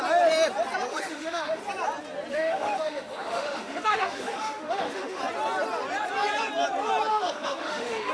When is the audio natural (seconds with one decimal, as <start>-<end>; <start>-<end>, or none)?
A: 0.0-0.9; 1.6-2.3; 5.2-7.1